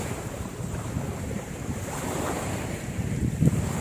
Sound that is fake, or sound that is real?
fake